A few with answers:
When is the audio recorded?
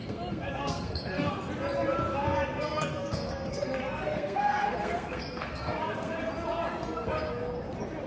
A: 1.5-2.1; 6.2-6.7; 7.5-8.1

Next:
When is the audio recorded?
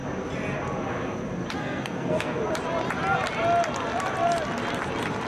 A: 0.0-1.6; 2.4-5.3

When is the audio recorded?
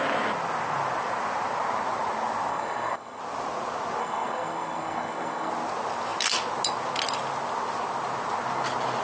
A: 0.0-2.5; 3.2-4.0; 5.5-9.0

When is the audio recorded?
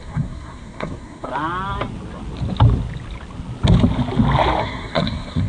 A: 1.3-4.6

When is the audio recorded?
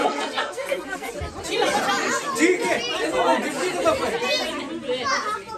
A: 1.1-5.6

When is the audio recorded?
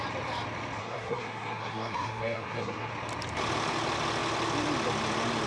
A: 0.0-0.8; 2.9-5.5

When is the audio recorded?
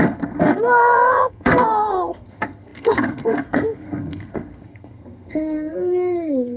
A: none